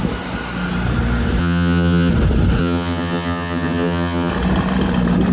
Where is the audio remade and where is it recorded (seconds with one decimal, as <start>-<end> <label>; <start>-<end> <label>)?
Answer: 0.0-1.4 recorded; 1.4-2.1 remade; 2.1-2.6 recorded; 2.6-4.3 remade; 4.3-5.3 recorded